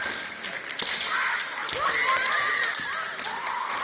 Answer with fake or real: real